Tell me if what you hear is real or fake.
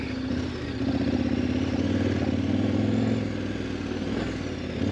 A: real